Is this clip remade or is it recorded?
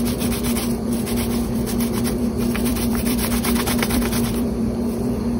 remade